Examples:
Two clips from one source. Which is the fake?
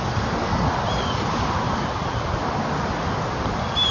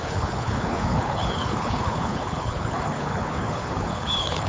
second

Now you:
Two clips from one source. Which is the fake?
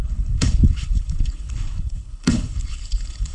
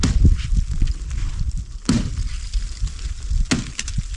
first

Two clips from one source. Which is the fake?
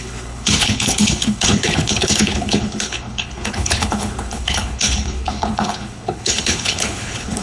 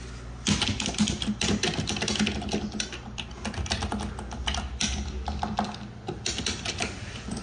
first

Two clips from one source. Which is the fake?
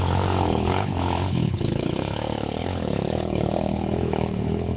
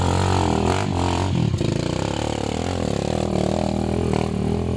first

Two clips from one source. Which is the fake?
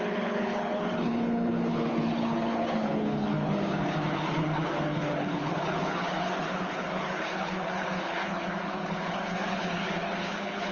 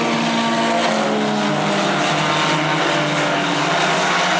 first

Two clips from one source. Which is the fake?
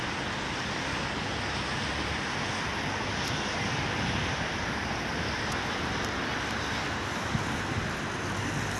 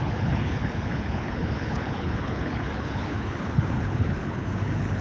second